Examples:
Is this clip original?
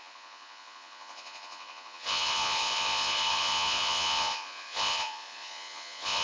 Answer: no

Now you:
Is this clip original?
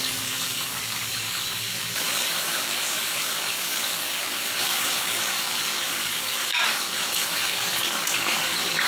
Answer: no